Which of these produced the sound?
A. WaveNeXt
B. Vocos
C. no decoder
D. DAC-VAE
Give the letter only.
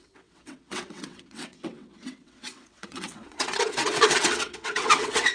A